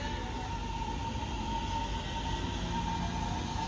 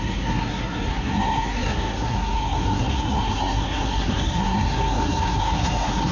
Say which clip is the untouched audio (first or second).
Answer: first